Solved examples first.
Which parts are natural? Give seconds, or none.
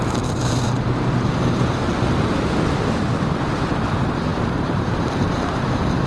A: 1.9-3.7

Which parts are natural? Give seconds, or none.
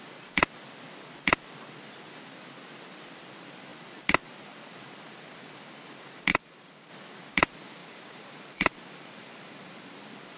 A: 0.0-6.3; 6.9-7.8; 10.0-10.4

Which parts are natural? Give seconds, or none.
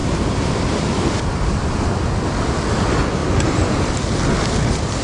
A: 1.7-3.2; 3.9-5.0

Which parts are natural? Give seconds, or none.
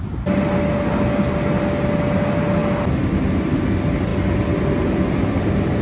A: 0.0-5.8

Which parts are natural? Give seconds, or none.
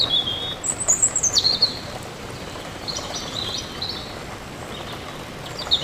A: 0.0-1.6; 3.6-5.8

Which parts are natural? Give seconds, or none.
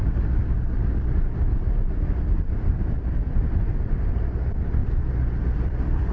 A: 0.0-3.7; 4.8-5.4